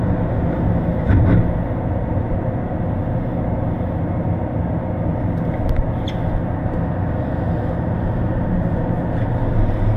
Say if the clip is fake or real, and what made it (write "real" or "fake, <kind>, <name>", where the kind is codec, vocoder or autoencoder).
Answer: real